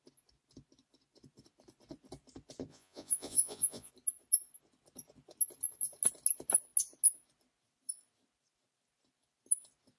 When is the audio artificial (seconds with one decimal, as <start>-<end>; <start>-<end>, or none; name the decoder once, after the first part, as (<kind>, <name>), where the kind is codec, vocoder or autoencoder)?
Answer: 2.7-3.9 (vocoder, Vocos)